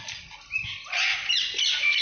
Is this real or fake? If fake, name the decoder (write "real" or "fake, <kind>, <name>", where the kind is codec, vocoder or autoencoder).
real